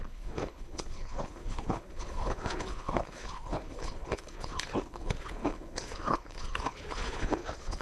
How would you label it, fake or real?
fake